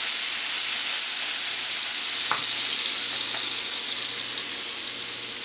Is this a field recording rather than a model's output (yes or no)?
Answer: yes